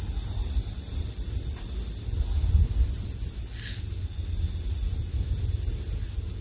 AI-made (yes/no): no